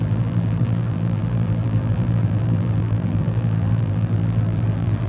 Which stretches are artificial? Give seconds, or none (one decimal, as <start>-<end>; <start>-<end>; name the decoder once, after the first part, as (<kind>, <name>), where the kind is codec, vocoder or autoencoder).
0.0-5.1 (vocoder, BigVGAN v2)